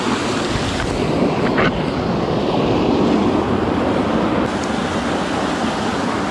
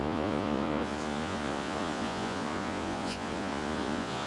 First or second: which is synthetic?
second